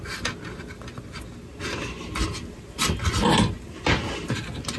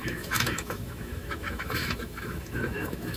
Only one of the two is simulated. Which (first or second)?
second